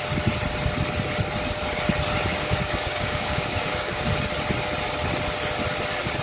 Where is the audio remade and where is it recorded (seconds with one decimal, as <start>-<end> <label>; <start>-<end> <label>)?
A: 0.0-2.3 recorded; 2.3-4.1 remade; 4.1-6.2 recorded